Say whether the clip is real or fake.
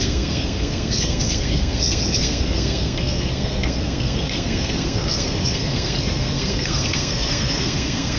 fake